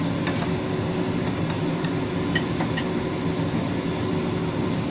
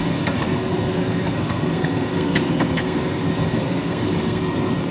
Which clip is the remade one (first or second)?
second